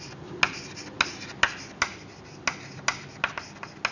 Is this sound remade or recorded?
recorded